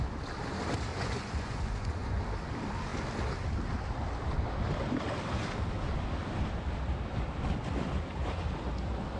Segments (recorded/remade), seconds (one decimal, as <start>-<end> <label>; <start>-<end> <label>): 0.0-0.9 recorded; 0.9-2.2 remade; 2.2-9.2 recorded